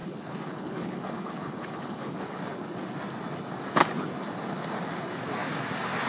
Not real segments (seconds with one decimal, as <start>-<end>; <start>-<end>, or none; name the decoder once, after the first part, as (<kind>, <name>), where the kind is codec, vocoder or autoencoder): 0.0-2.4 (codec, HILCodec)